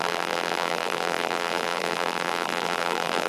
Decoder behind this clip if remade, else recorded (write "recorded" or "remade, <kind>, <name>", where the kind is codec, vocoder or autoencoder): remade, vocoder, BigVGAN v2